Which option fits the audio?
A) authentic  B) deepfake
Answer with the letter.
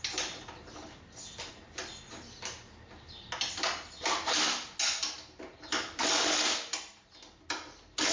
A